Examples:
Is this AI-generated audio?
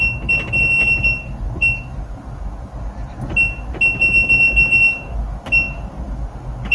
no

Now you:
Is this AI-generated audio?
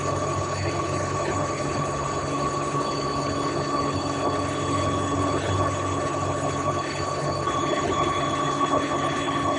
yes